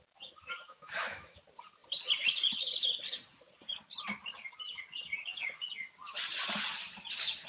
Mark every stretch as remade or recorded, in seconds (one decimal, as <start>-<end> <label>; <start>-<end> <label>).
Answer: 0.0-0.4 recorded; 0.4-1.4 remade; 1.4-7.5 recorded